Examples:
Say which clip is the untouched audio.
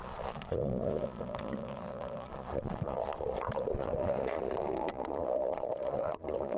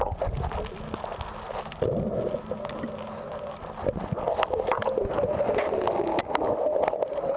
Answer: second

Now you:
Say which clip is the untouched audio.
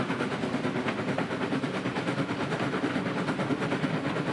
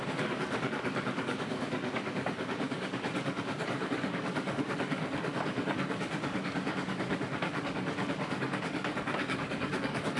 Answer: first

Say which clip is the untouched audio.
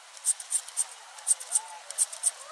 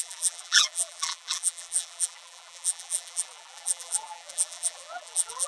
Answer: first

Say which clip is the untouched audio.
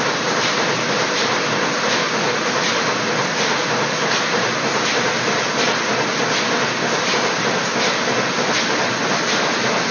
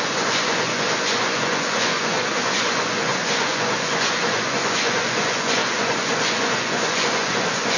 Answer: first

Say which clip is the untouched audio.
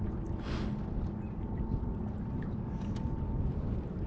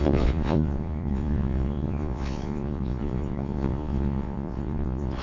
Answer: first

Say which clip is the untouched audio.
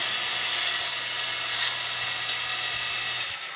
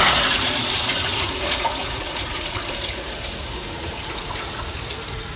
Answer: first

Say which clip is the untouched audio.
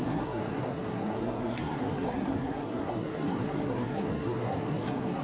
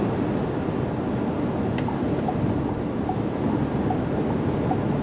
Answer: second